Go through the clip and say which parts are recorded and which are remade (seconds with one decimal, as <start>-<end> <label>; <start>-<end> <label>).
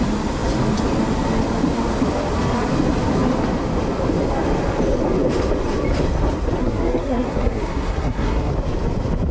0.0-6.6 recorded; 6.6-8.5 remade; 8.5-9.3 recorded